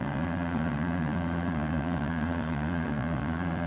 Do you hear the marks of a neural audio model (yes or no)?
yes